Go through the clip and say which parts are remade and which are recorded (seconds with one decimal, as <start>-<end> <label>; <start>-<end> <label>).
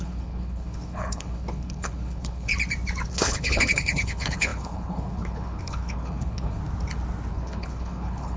0.0-2.5 remade; 2.5-3.1 recorded; 3.1-6.6 remade; 6.6-7.3 recorded; 7.3-8.4 remade